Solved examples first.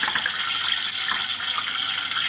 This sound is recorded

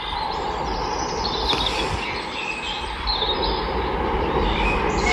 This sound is recorded